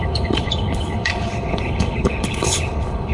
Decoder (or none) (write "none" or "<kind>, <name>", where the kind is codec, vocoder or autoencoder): codec, HILCodec